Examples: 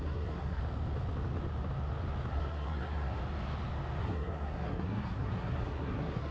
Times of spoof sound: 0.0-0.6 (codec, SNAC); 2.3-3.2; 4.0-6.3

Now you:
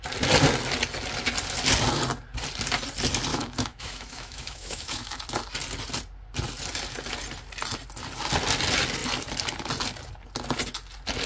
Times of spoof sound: 3.3-5.2 (autoencoder, DAC-VAE)

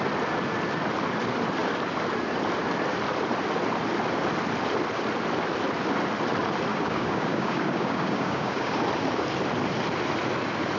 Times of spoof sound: 6.7-8.7 (codec, DAC)